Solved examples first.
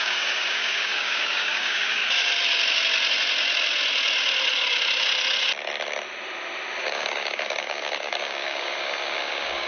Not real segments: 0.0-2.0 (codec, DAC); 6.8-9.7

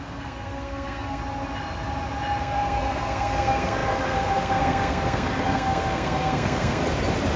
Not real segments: 0.0-1.2 (codec, SNAC); 2.4-6.8

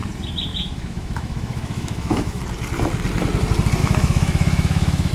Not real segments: 0.5-2.4 (autoencoder, DAC-VAE); 3.8-5.1

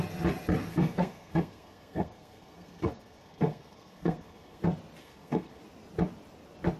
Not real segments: 0.7-4.6 (codec, SNAC); 5.0-5.6